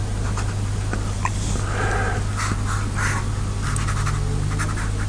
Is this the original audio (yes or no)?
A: yes